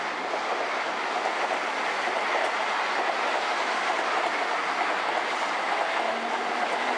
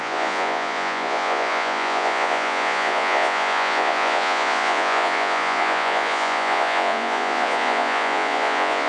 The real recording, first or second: first